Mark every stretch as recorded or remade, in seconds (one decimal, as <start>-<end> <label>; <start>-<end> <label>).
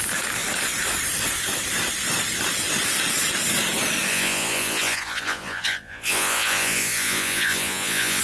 0.0-4.1 recorded; 4.1-8.2 remade